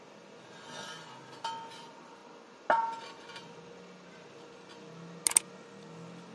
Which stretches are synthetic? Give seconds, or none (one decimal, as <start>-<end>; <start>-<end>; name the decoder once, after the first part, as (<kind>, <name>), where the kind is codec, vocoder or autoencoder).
none